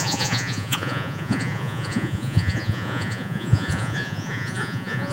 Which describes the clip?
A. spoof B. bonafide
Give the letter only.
A